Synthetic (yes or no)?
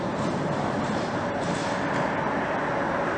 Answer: no